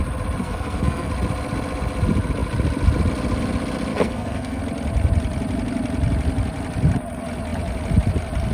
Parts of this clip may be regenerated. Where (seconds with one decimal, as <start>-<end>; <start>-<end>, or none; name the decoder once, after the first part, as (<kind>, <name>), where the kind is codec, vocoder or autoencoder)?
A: 0.4-1.1 (codec, SNAC); 3.9-4.6